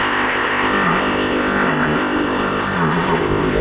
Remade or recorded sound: remade